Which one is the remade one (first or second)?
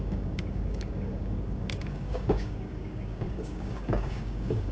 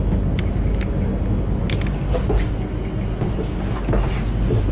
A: first